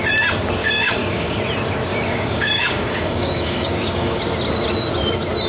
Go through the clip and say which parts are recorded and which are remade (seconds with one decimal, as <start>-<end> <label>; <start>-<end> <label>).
0.0-0.6 recorded; 0.6-1.4 remade; 1.4-1.9 recorded; 1.9-4.2 remade; 4.2-5.5 recorded